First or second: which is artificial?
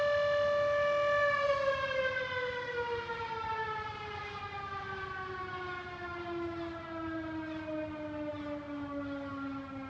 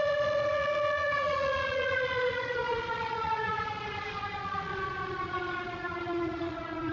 second